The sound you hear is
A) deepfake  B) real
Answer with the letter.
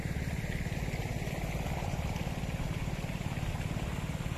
B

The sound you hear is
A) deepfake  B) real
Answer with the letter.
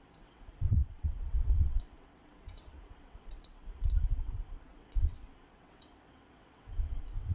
A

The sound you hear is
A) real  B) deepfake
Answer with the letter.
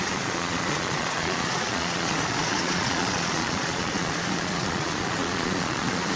B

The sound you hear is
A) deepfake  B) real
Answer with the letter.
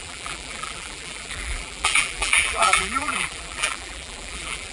A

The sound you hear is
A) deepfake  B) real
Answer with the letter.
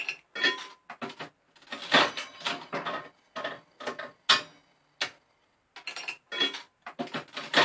B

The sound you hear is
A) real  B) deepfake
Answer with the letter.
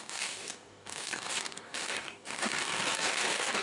B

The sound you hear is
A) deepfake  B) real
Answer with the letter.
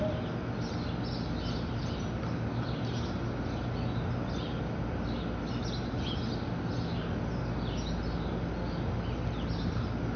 B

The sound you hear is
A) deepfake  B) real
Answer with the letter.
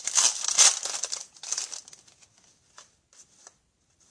B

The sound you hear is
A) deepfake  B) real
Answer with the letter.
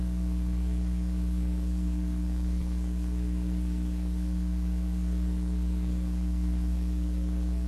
A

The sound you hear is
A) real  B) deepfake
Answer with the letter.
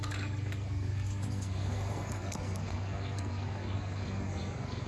B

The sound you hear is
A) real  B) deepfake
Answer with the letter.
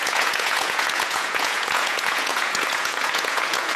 B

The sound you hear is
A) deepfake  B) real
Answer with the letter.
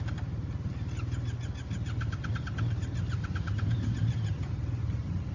B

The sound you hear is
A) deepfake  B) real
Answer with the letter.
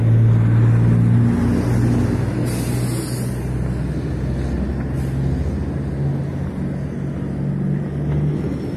B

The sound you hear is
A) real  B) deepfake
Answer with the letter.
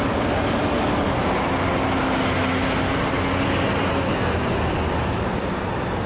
A